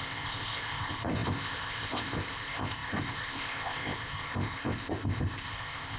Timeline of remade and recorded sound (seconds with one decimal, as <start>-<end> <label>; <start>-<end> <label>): 0.0-6.0 remade